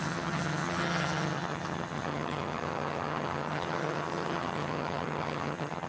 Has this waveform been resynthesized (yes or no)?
yes